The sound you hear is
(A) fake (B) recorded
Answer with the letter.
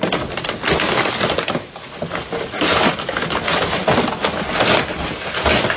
B